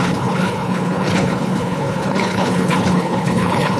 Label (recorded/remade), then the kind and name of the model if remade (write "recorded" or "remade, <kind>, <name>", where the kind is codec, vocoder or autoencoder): remade, codec, HILCodec